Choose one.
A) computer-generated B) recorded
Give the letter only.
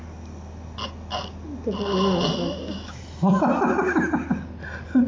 B